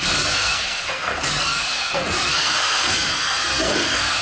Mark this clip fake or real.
fake